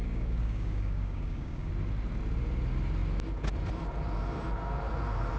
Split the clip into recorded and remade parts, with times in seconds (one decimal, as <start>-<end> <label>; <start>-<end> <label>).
0.0-1.7 remade; 1.7-5.4 recorded